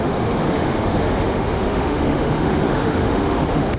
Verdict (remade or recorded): remade